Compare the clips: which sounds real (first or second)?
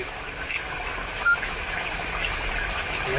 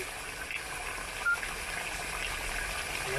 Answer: second